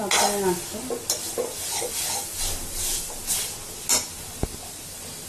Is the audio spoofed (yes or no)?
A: no